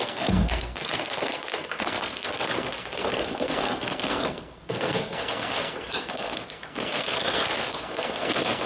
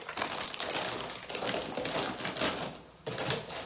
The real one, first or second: second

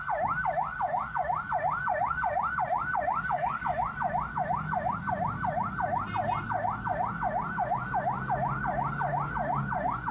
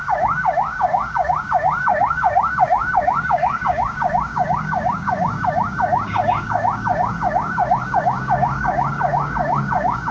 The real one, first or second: first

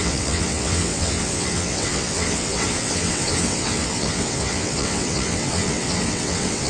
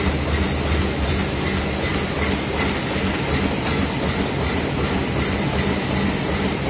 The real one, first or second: second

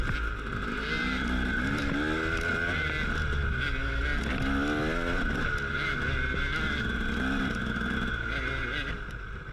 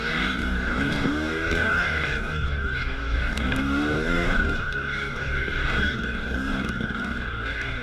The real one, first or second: first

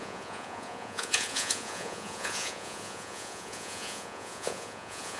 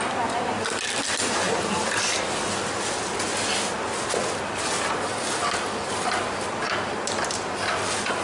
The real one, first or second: second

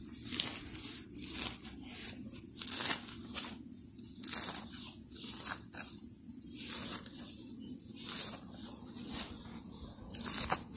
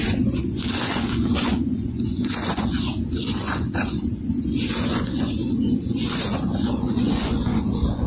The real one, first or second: first